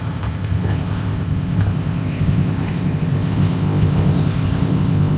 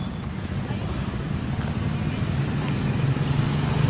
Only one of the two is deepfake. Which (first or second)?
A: first